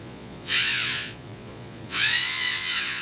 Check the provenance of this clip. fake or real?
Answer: fake